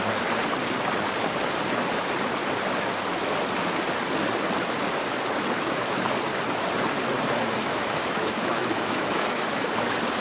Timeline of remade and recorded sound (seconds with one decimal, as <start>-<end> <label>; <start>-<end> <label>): 0.0-7.7 recorded; 7.7-9.7 remade; 9.7-10.2 recorded